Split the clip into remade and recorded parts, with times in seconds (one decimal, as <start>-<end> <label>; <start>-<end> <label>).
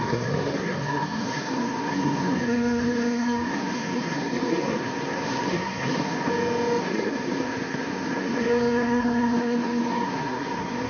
0.0-6.3 remade; 6.3-6.8 recorded; 6.8-10.9 remade